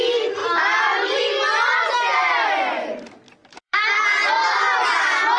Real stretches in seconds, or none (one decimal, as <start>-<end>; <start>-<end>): 0.0-0.4; 1.2-3.4; 4.0-5.4